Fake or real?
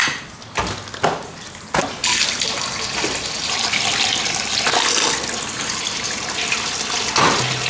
real